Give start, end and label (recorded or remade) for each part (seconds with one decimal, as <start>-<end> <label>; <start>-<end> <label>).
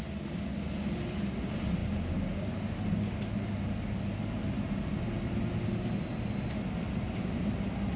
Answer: 0.0-8.0 recorded